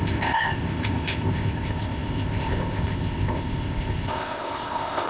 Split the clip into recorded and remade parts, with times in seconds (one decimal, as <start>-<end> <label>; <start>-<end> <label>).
0.0-5.1 remade